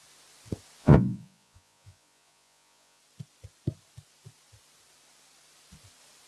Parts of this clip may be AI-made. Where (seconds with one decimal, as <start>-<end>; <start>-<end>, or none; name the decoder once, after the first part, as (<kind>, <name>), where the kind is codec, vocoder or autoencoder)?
0.8-3.0 (vocoder, Vocos)